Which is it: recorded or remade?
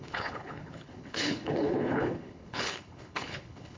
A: remade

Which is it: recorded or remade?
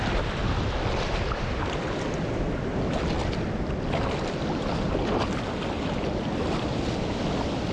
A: recorded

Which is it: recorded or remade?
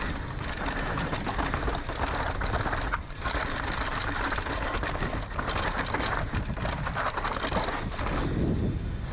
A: recorded